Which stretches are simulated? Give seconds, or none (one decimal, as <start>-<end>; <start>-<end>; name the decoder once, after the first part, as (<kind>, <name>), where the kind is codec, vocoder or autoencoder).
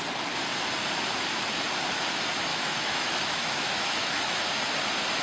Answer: 2.5-4.4 (autoencoder, DAC-VAE)